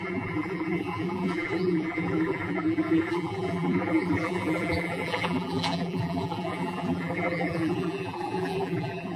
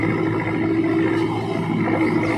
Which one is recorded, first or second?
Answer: second